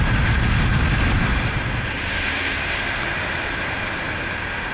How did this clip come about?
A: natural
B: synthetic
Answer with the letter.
A